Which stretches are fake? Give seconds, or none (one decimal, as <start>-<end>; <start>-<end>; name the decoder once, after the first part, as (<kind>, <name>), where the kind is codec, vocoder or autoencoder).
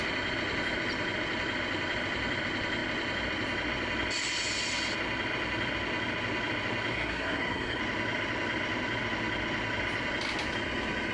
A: 6.9-7.8 (codec, SNAC)